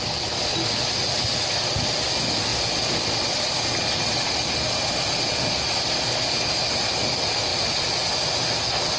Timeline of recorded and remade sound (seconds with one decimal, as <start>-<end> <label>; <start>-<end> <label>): 0.0-9.0 recorded